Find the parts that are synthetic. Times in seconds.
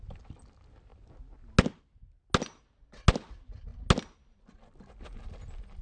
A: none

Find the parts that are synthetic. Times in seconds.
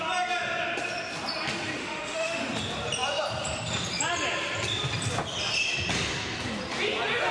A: 1.8-2.4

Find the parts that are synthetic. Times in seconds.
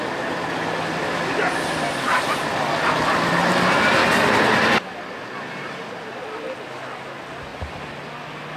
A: 4.0-5.0; 7.5-8.0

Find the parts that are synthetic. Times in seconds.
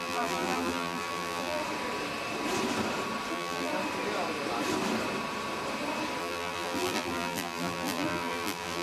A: 0.0-1.6; 3.3-3.7; 6.2-8.8